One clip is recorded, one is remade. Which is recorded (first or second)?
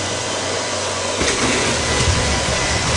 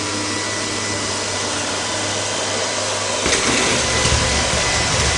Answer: second